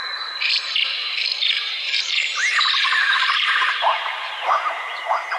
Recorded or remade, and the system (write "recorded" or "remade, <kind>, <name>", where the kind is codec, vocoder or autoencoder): remade, vocoder, BigVGAN v2